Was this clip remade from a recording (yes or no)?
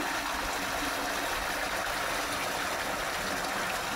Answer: no